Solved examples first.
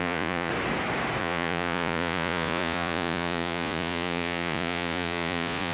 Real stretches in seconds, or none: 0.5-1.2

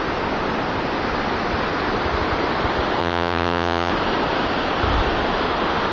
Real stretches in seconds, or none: 0.0-3.0; 3.9-5.9

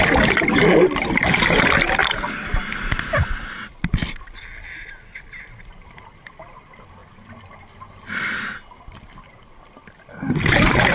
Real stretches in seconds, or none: 0.0-10.9

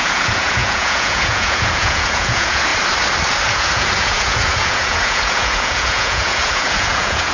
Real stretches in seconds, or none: 2.7-3.4

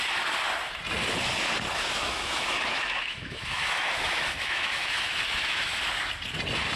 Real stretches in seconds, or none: 0.0-1.7; 5.8-6.8

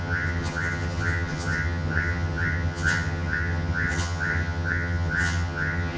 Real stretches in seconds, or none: none

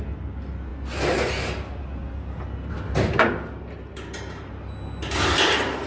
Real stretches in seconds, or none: 0.0-5.9